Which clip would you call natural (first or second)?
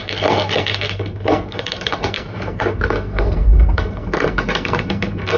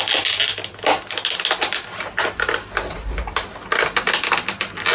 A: second